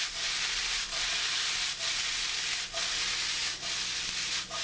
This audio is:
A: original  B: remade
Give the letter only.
A